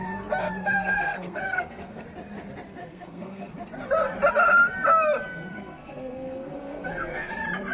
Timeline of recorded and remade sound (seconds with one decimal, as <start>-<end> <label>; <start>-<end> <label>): 0.0-0.6 recorded; 0.6-2.0 remade; 2.0-2.8 recorded; 2.8-3.5 remade; 3.5-5.5 recorded; 5.5-7.3 remade; 7.3-7.7 recorded